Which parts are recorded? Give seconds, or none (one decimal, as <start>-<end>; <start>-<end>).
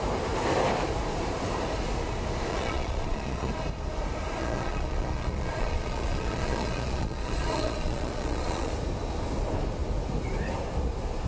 0.0-2.5; 3.5-4.4; 8.7-11.3